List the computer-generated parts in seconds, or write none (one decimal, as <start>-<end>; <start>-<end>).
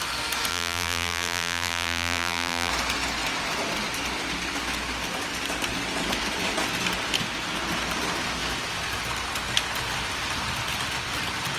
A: 0.5-2.7